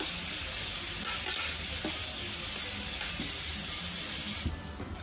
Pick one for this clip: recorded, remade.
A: recorded